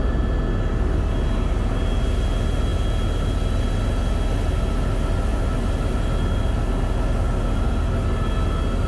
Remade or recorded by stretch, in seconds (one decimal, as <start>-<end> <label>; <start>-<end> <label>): 0.0-8.9 recorded

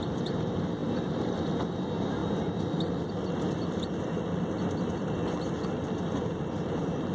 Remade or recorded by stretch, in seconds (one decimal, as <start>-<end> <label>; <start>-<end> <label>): 0.0-7.1 recorded

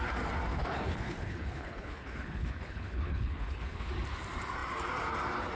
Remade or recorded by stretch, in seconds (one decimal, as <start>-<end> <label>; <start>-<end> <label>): 0.0-0.5 recorded; 0.5-3.9 remade; 3.9-5.6 recorded

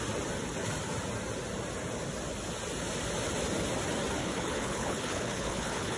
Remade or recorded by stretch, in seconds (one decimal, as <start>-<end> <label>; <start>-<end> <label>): 0.0-4.2 recorded; 4.2-6.0 remade

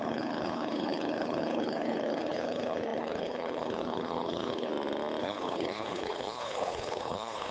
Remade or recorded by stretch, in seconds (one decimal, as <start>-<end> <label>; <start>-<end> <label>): 0.0-4.7 remade; 4.7-5.2 recorded; 5.2-7.5 remade